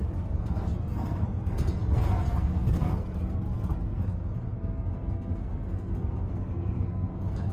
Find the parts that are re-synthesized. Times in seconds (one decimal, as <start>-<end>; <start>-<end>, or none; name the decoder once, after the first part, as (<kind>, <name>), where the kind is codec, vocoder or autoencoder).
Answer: 0.0-7.5 (codec, SNAC)